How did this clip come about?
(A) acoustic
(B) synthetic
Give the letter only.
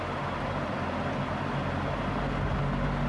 A